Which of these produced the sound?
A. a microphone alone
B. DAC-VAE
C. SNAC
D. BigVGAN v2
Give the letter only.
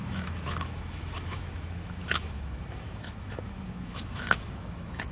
B